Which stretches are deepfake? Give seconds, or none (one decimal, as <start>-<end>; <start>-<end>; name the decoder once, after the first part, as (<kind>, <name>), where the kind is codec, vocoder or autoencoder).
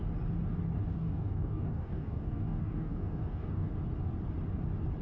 0.8-3.7 (codec, DAC)